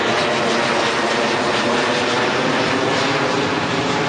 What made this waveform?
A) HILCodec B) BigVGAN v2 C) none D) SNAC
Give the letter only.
C